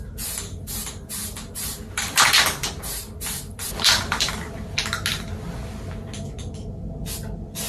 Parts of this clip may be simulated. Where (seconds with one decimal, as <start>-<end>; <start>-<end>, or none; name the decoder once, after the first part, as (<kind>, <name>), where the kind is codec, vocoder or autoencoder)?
1.2-2.7 (vocoder, BigVGAN v2); 3.5-4.3

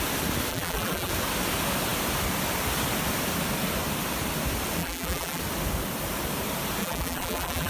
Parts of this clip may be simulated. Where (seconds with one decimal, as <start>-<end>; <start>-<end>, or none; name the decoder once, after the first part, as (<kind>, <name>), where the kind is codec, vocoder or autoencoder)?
0.5-1.1 (vocoder, BigVGAN v2); 4.8-5.4; 6.8-7.7

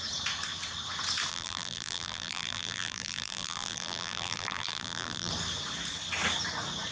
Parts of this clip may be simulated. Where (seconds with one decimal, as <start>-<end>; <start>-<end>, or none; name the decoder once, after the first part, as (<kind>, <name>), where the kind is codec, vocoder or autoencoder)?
1.3-5.3 (vocoder, BigVGAN v2)

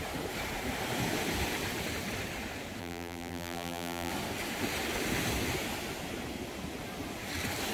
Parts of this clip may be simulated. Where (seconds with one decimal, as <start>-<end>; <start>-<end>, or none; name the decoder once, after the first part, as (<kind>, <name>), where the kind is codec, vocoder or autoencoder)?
2.8-4.1 (vocoder, BigVGAN v2)